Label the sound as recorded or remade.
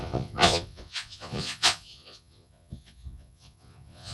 remade